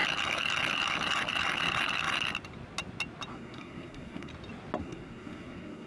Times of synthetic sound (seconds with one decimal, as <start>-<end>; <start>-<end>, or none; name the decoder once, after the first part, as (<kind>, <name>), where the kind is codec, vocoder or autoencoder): 3.3-4.3 (codec, SNAC); 4.8-5.9